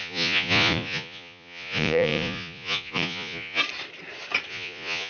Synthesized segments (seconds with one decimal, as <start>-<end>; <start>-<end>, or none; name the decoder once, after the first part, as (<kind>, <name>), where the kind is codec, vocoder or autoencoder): 0.0-3.6 (vocoder, Vocos); 4.5-5.1